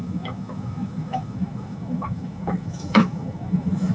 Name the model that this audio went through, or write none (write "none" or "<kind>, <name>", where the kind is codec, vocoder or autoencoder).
autoencoder, DAC-VAE